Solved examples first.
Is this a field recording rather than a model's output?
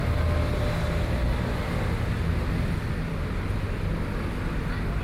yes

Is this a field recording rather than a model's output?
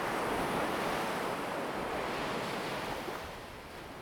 yes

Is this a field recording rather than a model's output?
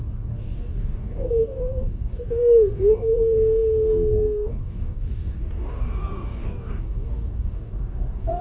no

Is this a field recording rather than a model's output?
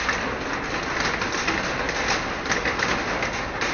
yes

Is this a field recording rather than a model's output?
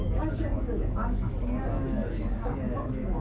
no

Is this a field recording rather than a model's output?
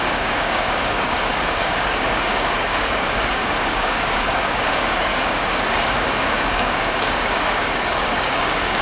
no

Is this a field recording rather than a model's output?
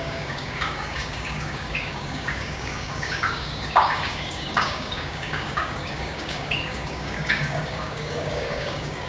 no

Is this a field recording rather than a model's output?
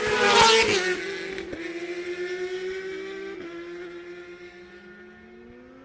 yes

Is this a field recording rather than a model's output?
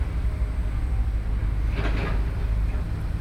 yes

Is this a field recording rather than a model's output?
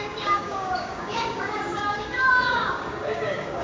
no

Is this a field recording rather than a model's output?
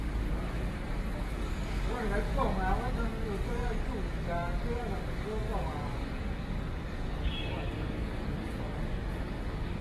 no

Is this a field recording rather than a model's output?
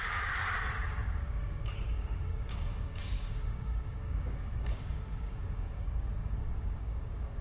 no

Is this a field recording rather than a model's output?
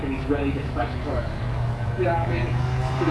no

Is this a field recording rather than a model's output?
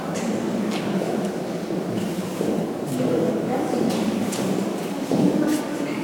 no